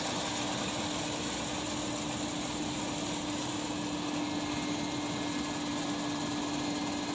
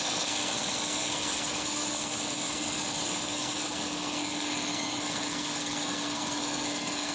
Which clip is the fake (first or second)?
second